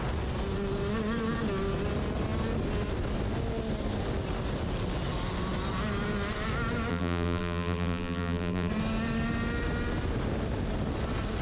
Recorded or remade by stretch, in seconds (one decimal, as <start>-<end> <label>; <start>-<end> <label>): 0.0-6.9 recorded; 6.9-8.7 remade; 8.7-11.4 recorded